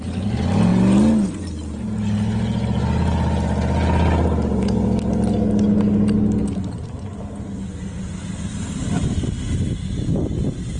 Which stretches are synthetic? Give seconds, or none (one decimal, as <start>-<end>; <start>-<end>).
none

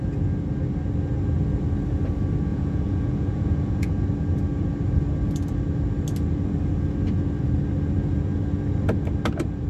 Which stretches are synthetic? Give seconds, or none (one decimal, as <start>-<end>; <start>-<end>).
2.5-3.9